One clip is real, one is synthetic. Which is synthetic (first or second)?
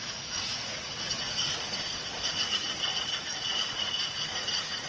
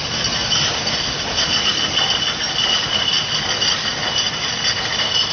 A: first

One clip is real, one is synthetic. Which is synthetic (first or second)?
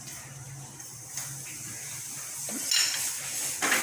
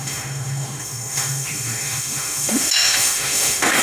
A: second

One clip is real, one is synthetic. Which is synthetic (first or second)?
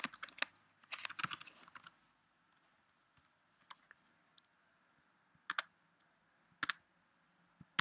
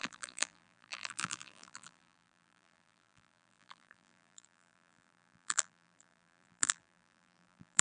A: second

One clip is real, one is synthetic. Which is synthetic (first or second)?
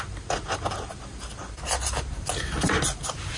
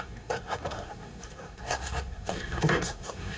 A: second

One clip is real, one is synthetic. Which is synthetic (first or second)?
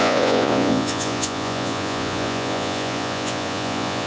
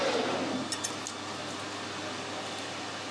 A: first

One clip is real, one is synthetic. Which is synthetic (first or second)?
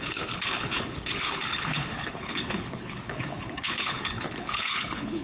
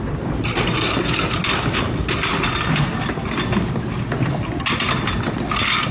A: first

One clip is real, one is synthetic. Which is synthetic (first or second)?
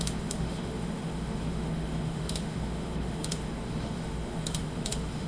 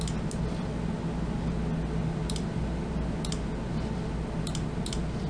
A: first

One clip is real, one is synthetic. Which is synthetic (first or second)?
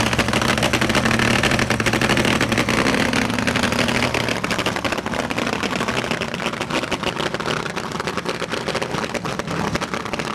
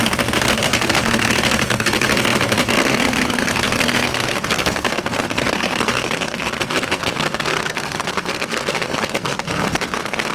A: second